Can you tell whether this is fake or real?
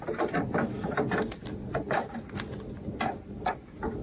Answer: real